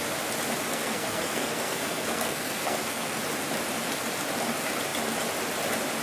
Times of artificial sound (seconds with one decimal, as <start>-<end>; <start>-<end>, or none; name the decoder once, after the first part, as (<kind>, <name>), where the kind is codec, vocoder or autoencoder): 0.7-3.2 (codec, SNAC)